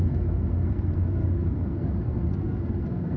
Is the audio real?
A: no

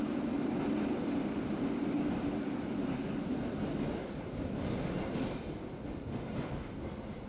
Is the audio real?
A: yes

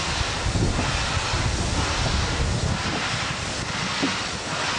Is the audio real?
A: yes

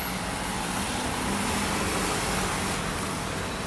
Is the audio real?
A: yes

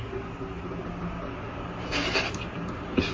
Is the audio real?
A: yes